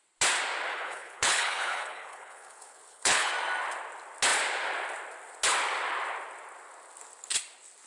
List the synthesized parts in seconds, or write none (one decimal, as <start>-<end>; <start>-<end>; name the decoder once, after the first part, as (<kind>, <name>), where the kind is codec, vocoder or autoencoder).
0.7-3.3 (codec, HILCodec)